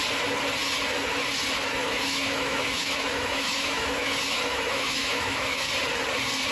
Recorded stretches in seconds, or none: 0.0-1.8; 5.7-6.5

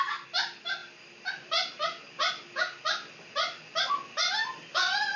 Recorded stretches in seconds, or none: 0.0-5.2

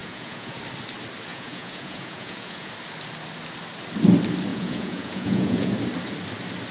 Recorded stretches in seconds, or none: 0.6-1.3; 2.7-4.5; 5.7-6.7

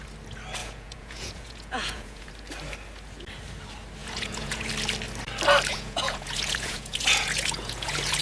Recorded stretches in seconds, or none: 0.0-0.6; 2.3-4.0; 4.7-5.7